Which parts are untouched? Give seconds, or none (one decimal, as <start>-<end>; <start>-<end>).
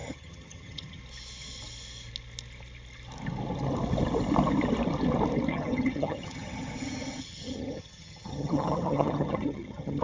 1.0-5.5